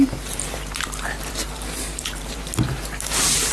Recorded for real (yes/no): no